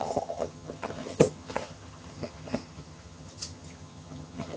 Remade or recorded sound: remade